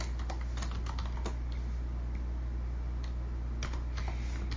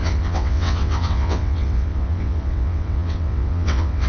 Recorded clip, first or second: first